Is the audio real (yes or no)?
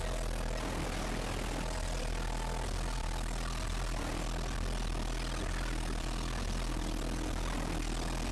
yes